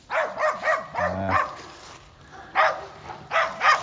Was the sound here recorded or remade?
recorded